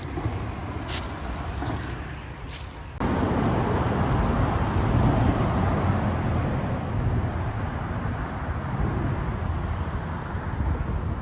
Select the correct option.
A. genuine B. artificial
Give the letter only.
A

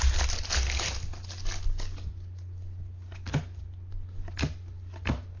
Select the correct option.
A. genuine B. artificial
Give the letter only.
A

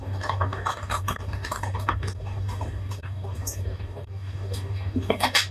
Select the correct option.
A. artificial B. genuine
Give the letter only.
A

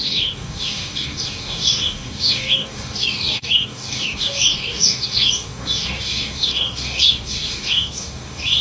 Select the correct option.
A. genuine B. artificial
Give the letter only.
B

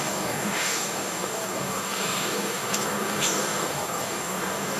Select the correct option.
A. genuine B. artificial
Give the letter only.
B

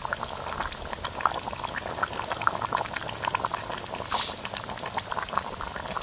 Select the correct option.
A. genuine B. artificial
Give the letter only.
A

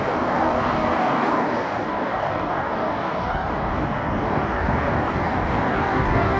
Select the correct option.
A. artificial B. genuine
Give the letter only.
A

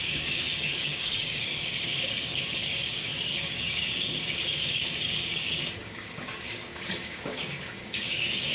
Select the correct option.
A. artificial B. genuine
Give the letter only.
A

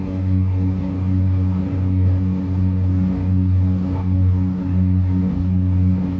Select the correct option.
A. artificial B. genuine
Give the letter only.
A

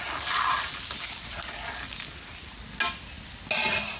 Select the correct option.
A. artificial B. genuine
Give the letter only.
B